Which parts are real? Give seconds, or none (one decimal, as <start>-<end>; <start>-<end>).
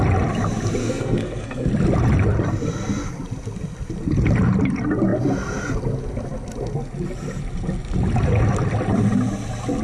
0.0-0.8; 1.7-9.8